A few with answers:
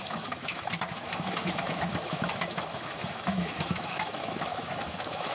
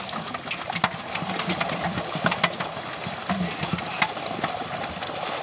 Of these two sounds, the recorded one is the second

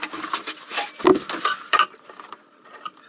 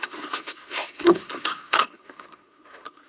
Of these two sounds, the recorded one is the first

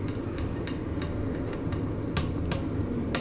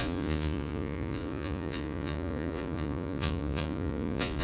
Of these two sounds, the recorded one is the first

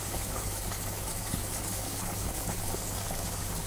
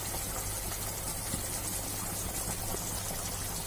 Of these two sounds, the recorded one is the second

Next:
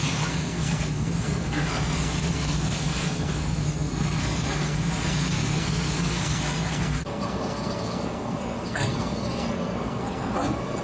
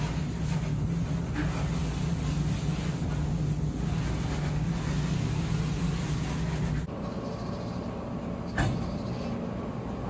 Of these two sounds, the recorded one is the second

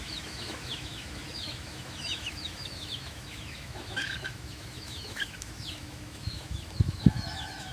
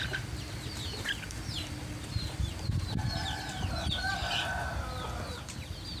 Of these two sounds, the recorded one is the second